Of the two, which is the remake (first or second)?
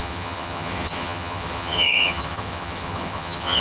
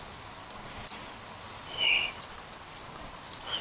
first